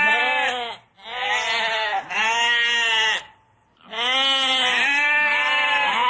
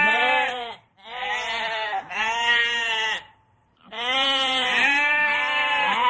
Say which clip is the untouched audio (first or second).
first